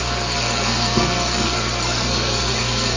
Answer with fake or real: fake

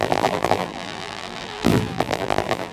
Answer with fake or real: fake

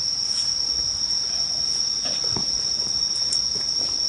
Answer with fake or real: real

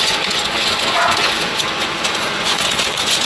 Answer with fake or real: fake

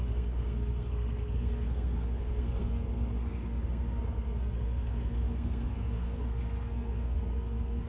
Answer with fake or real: fake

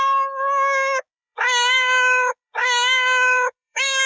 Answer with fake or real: fake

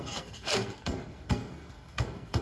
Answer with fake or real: fake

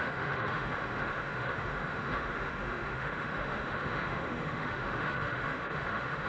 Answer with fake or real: fake